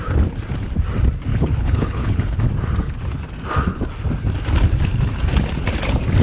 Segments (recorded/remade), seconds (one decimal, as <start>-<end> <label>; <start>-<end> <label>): 0.0-1.3 recorded; 1.3-2.4 remade; 2.4-6.2 recorded